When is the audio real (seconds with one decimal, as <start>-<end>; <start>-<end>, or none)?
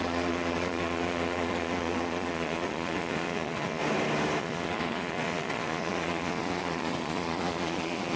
3.8-4.4